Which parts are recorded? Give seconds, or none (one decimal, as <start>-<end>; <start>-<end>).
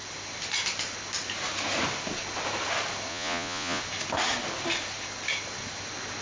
0.0-3.1; 3.8-6.2